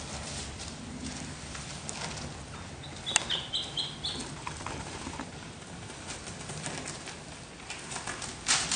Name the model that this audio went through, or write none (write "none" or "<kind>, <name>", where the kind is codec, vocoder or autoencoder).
none